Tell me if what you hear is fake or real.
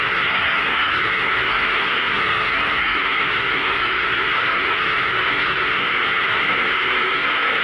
fake